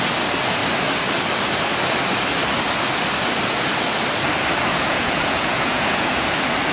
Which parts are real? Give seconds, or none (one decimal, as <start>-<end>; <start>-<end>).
0.0-4.7; 6.3-6.7

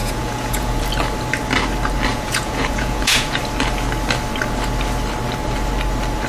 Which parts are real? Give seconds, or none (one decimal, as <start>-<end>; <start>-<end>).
0.8-2.1; 3.4-6.3

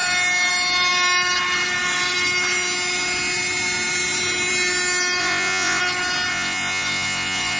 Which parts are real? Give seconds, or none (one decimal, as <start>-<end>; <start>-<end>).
0.0-5.2; 5.8-6.3

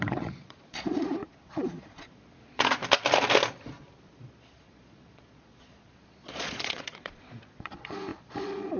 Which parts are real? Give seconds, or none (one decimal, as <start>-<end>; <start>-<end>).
2.8-4.1